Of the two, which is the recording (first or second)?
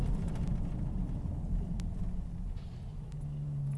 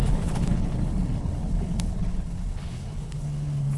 first